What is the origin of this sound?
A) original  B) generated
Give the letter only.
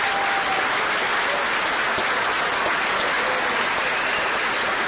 A